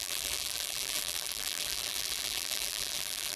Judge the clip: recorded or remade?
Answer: remade